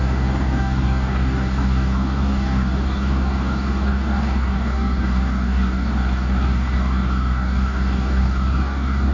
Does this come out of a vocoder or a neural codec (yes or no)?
yes